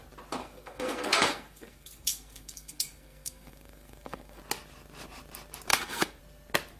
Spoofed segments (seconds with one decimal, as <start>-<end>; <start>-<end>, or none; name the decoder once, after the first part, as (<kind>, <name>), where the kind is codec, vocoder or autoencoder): 0.4-4.4 (codec, SNAC); 5.7-6.2